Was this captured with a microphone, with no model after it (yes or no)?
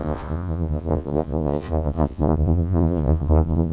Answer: no